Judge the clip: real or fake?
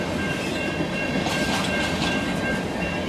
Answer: real